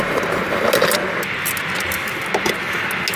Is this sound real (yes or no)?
yes